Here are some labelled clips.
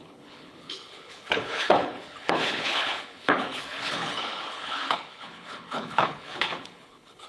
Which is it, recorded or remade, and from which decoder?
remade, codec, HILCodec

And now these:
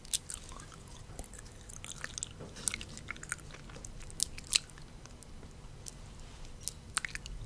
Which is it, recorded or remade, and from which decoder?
recorded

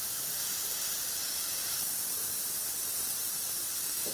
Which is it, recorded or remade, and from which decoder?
remade, vocoder, BigVGAN v2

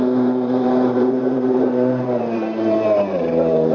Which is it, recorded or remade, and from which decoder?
remade, vocoder, BigVGAN v2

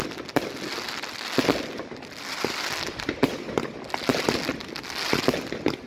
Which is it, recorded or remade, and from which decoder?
recorded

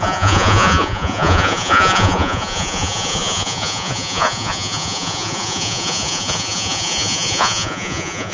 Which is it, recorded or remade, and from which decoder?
remade, vocoder, Vocos